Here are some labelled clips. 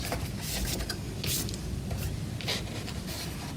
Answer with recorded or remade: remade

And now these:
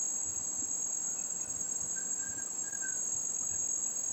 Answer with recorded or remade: remade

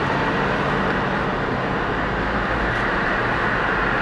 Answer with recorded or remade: recorded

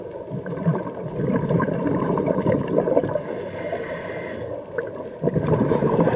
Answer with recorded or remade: remade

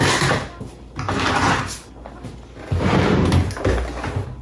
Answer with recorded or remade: recorded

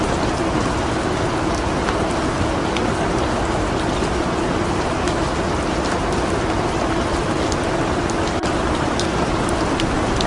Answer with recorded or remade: recorded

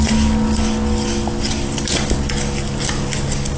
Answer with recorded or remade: recorded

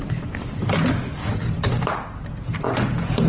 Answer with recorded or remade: recorded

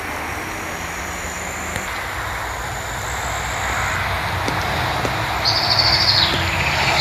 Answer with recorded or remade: recorded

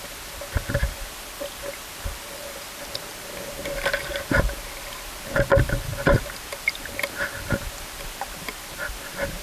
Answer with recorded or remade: remade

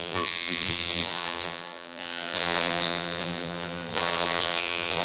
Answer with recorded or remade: remade